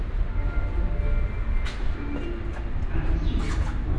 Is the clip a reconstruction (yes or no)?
no